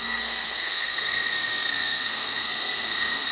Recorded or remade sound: remade